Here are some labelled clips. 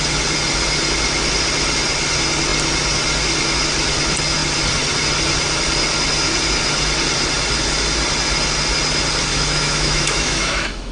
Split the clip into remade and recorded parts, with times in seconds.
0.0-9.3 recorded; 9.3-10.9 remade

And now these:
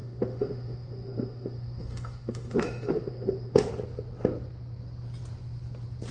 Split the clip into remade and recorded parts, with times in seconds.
0.0-3.7 remade; 3.7-6.1 recorded

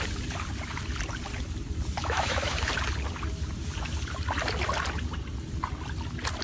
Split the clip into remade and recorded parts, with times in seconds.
0.0-2.0 recorded; 2.0-2.7 remade; 2.7-6.4 recorded

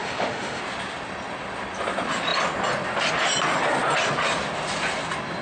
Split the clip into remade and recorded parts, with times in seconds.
0.0-0.6 remade; 0.6-5.4 recorded

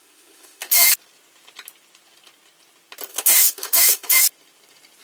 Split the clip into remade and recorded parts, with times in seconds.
0.0-0.9 remade; 0.9-3.1 recorded; 3.1-4.2 remade; 4.2-5.0 recorded

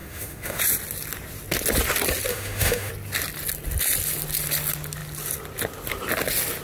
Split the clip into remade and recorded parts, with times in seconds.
0.0-0.6 remade; 0.6-2.3 recorded; 2.3-2.9 remade; 2.9-6.6 recorded

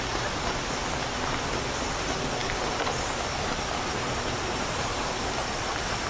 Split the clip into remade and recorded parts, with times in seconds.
0.0-6.1 recorded

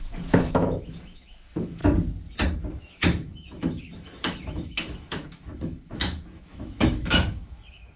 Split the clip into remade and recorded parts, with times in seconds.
0.0-1.8 remade; 1.8-2.8 recorded; 2.8-8.0 remade